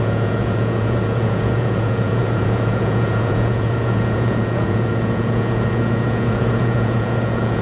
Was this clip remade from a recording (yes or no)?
yes